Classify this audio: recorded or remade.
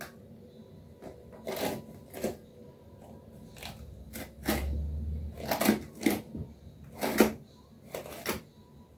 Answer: recorded